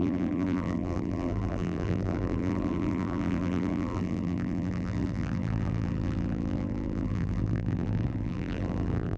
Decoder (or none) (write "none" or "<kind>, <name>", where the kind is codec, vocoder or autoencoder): vocoder, BigVGAN v2